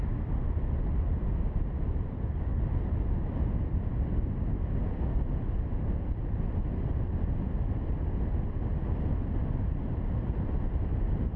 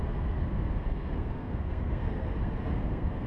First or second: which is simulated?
second